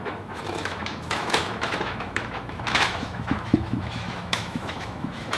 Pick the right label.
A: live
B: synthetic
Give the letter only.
B